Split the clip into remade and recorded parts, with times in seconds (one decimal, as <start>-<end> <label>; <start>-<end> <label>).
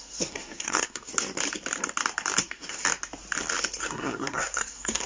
0.0-1.1 remade; 1.1-2.4 recorded; 2.4-2.8 remade; 2.8-3.8 recorded; 3.8-5.1 remade